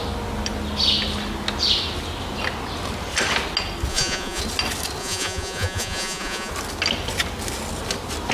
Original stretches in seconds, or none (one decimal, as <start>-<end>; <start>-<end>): 0.0-3.9; 4.4-5.0; 6.5-8.3